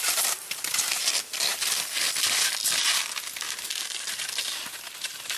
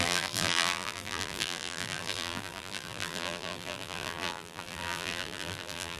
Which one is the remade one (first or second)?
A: second